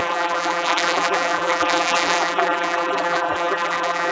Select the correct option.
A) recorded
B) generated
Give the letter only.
B